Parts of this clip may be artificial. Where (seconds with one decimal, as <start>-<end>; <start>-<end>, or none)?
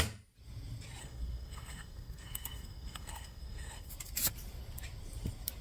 1.0-3.9